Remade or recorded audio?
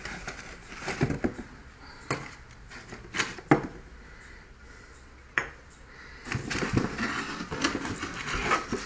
recorded